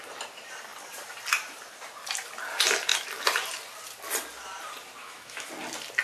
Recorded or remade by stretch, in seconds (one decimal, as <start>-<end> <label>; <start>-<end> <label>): 0.0-5.0 recorded; 5.0-5.5 remade; 5.5-6.0 recorded